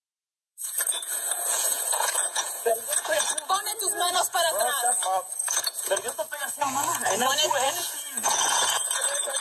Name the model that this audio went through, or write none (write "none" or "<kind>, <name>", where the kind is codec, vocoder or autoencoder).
vocoder, Vocos